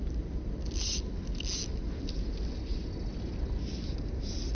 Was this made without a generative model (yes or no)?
yes